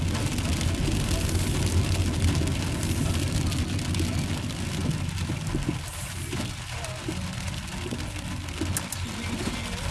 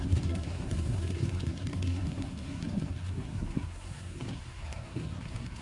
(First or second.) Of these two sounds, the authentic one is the first